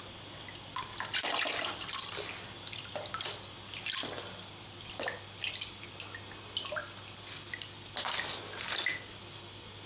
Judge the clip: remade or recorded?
recorded